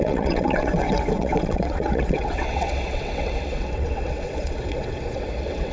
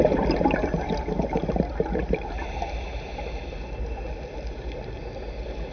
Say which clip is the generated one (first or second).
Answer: first